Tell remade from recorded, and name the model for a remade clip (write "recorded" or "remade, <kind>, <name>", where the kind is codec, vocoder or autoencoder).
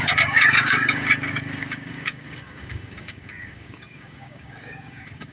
remade, codec, DAC